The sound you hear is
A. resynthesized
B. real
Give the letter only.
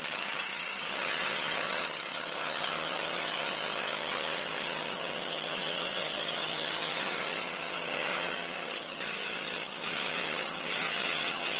A